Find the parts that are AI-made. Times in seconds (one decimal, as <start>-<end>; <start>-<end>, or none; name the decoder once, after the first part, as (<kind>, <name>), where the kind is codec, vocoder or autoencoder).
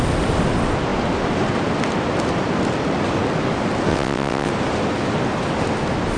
3.9-4.5 (vocoder, WaveNeXt)